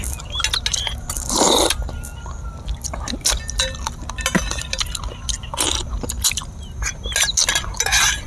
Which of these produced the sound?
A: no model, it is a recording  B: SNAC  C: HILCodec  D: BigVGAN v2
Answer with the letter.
A